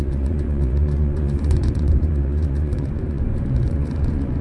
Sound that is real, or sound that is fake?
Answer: fake